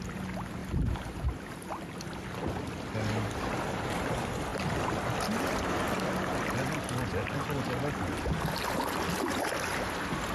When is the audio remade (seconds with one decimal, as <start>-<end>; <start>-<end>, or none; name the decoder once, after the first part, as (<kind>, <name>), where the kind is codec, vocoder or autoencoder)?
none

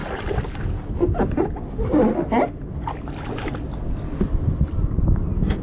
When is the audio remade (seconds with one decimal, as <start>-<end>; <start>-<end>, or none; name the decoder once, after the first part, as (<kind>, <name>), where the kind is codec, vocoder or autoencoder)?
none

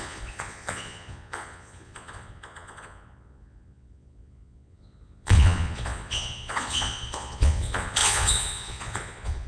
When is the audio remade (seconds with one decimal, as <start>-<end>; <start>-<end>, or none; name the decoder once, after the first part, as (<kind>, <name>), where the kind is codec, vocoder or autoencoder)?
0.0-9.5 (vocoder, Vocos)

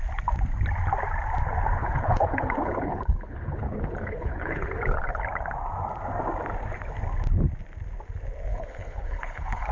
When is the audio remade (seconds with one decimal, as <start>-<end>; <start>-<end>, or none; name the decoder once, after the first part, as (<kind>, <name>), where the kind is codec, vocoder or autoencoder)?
1.8-5.2 (codec, HILCodec); 8.5-9.7

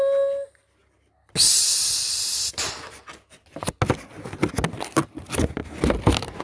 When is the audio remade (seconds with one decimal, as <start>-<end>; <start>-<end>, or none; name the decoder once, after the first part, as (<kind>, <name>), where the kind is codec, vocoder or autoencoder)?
none